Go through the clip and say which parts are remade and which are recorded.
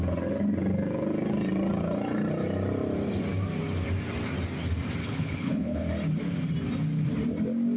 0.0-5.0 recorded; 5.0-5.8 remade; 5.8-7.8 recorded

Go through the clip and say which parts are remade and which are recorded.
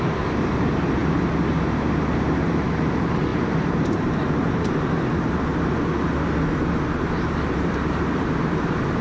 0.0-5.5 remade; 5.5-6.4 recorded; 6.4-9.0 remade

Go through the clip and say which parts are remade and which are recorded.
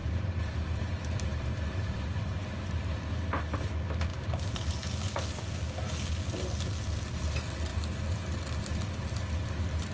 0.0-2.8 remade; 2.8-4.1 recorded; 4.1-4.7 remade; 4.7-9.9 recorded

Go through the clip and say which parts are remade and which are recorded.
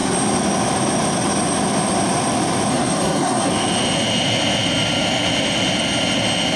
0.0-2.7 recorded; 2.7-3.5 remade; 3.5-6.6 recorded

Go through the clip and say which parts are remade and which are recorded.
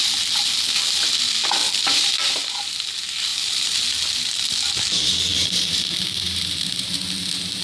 0.0-1.6 recorded; 1.6-2.5 remade; 2.5-5.3 recorded; 5.3-7.0 remade; 7.0-7.6 recorded